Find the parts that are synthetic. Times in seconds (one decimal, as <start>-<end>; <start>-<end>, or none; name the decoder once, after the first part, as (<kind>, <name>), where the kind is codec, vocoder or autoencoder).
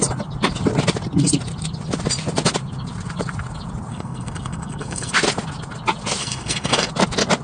3.9-5.1 (codec, SNAC); 6.2-6.9